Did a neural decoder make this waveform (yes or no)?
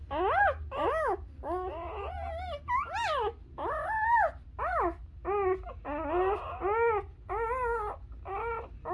no